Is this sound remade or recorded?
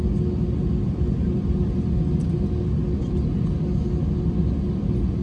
recorded